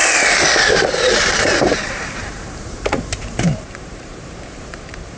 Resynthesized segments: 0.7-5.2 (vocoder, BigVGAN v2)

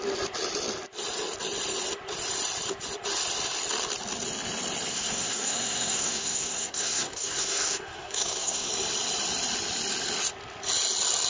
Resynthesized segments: 4.9-8.7 (codec, SNAC)

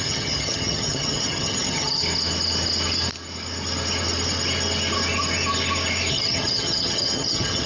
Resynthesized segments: 0.0-2.0 (vocoder, HiFi-GAN); 6.1-7.7

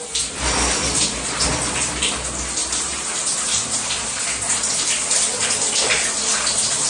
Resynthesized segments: 2.6-4.2 (vocoder, BigVGAN v2)

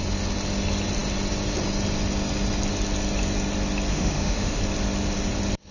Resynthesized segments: 3.9-4.6 (autoencoder, DAC-VAE)

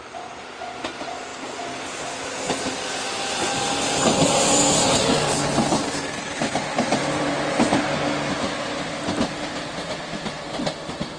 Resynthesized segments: none